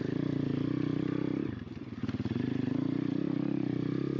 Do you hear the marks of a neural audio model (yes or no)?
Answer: no